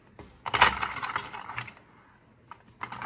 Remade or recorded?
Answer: recorded